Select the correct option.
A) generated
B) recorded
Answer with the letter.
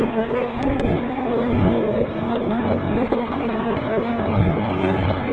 A